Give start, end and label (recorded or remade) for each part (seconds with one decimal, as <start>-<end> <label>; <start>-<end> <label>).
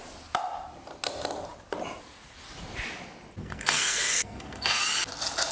0.0-3.4 recorded; 3.4-4.8 remade; 4.8-5.5 recorded